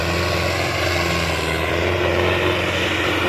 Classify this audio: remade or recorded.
recorded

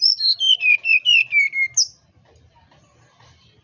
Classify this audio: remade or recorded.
recorded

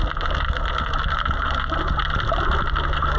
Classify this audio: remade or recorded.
recorded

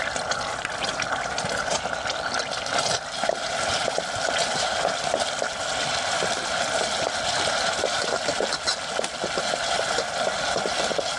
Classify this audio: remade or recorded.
recorded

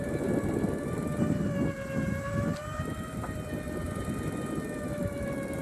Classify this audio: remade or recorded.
recorded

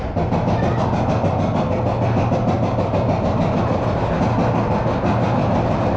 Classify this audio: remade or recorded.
recorded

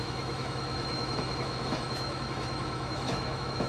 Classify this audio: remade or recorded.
remade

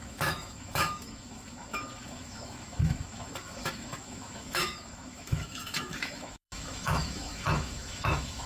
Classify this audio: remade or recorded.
remade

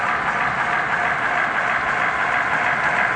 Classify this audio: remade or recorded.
recorded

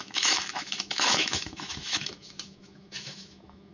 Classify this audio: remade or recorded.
remade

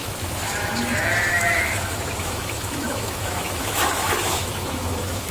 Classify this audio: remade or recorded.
remade